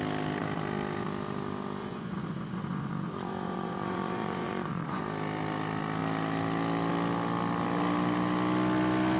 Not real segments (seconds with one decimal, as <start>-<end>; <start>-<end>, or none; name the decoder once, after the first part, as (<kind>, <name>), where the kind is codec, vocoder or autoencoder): 1.8-5.0 (vocoder, Vocos)